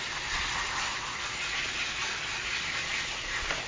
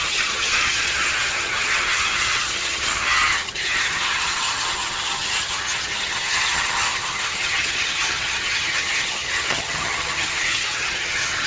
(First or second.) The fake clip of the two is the second